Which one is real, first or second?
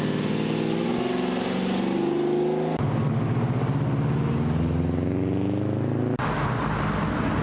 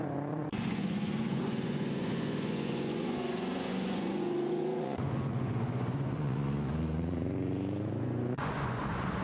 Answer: first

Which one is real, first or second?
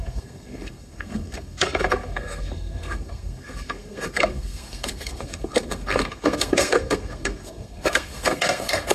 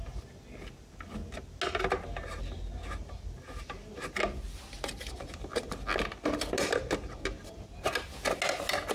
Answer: second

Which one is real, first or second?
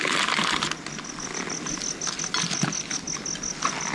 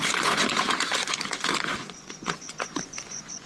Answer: first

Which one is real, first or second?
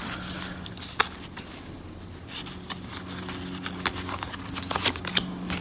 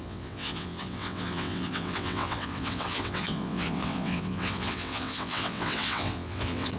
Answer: first